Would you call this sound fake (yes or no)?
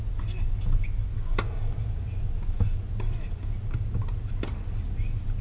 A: no